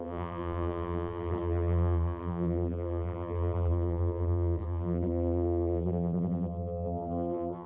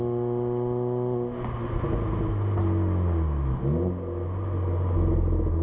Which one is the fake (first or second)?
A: first